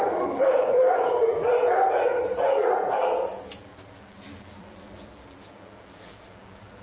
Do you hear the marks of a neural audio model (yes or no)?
yes